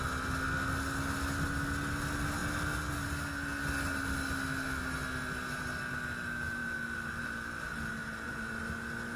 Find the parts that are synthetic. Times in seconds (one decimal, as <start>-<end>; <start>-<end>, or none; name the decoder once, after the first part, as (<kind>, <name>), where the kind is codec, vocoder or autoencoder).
none